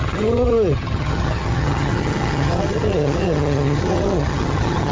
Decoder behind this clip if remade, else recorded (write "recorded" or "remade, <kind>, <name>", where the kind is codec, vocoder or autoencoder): remade, vocoder, HiFi-GAN